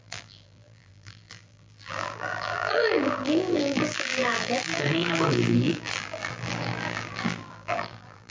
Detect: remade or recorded remade